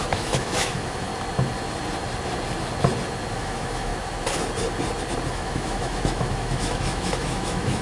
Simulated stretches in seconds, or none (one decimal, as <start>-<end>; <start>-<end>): 0.0-1.1; 3.3-3.9; 5.3-7.8